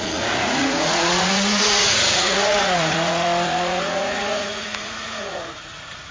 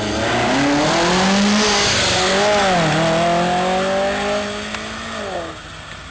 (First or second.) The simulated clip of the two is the first